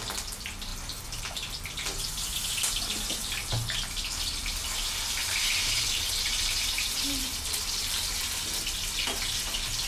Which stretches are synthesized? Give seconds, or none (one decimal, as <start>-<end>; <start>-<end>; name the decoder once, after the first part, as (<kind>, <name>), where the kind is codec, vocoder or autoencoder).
5.2-8.6 (vocoder, BigVGAN v2)